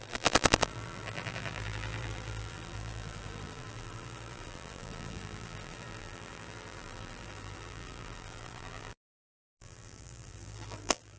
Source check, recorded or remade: remade